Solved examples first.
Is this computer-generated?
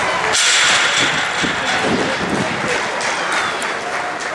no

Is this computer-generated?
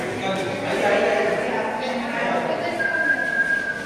no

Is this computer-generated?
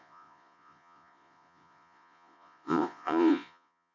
yes